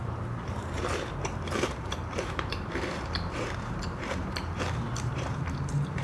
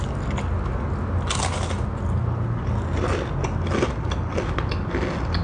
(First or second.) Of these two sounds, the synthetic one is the first